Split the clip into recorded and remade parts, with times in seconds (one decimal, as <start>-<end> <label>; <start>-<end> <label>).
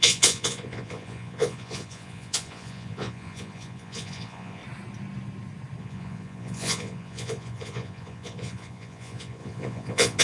0.0-4.6 remade; 4.6-5.8 recorded; 5.8-10.2 remade